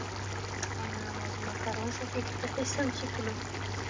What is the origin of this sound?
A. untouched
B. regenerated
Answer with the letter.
A